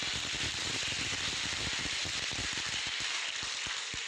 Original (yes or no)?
yes